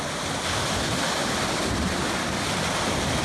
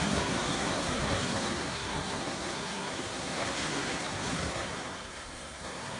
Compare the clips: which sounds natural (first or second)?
first